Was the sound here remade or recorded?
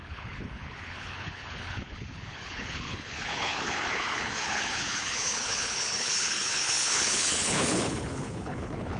remade